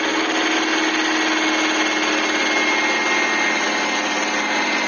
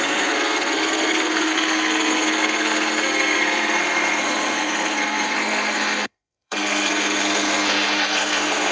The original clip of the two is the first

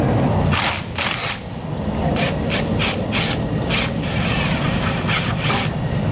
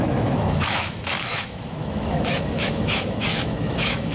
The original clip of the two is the first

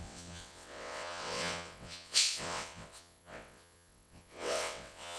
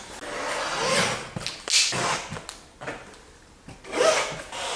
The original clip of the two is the second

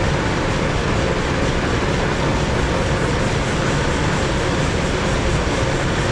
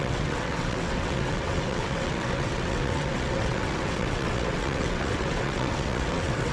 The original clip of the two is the first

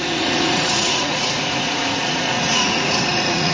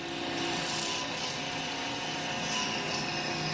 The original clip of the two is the second